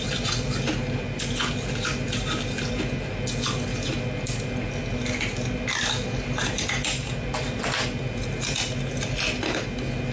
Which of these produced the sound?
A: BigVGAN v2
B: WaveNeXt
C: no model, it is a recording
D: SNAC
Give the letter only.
C